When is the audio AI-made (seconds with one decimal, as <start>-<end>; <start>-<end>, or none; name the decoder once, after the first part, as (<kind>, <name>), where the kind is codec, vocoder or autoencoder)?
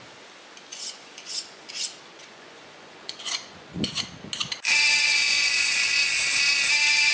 0.7-1.7 (vocoder, Vocos); 2.1-3.9; 5.0-6.1